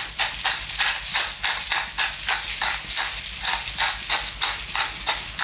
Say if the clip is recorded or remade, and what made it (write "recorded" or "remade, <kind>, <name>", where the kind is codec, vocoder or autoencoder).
recorded